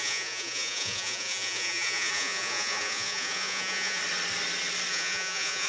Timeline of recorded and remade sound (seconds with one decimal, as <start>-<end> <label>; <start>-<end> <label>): 0.0-4.0 remade; 4.0-4.9 recorded; 4.9-5.7 remade